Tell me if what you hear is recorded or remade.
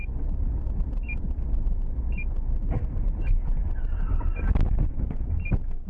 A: recorded